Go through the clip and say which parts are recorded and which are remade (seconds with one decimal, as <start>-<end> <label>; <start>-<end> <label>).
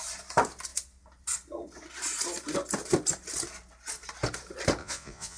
0.0-4.8 recorded; 4.8-5.4 remade